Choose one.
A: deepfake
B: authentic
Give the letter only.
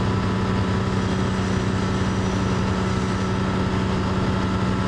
B